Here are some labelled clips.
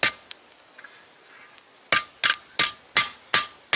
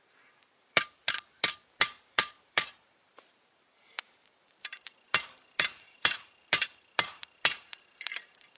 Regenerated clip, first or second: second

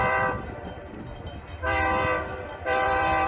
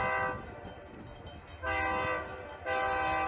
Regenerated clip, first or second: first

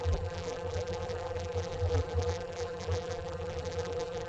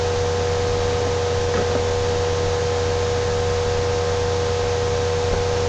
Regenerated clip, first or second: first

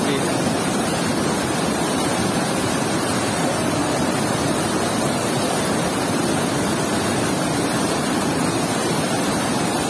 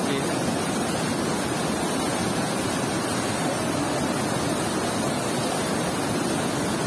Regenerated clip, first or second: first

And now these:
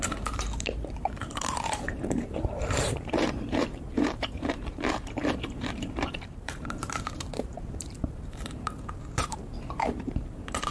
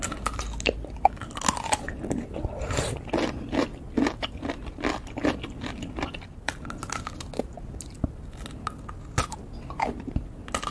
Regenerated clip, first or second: first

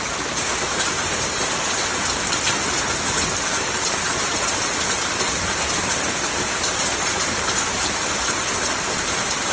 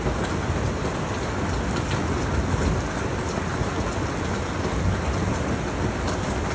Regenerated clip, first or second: first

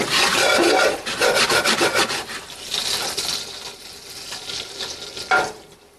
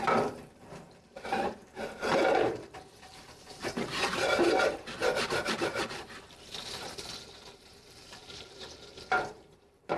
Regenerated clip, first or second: second